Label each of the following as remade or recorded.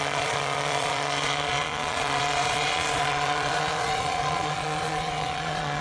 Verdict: remade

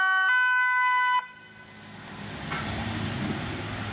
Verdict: recorded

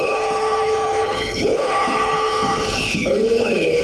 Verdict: remade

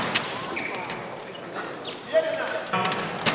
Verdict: recorded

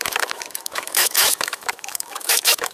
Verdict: remade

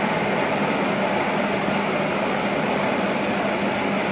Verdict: recorded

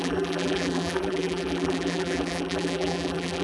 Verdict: remade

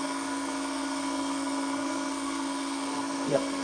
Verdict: remade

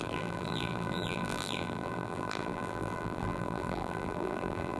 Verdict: remade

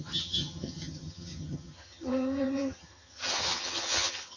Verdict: remade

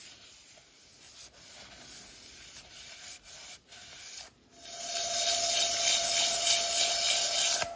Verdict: recorded